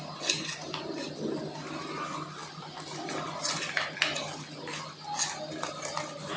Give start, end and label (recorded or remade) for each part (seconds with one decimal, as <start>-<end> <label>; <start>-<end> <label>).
0.0-6.4 recorded